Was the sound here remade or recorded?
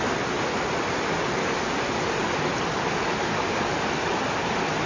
recorded